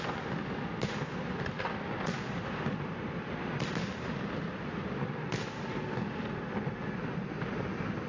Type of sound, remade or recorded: recorded